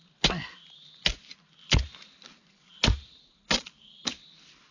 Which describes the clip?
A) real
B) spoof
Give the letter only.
A